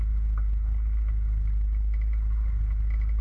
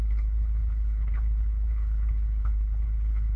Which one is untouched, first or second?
first